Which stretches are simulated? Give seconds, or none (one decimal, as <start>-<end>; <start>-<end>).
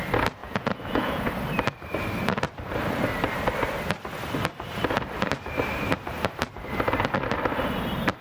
0.4-1.3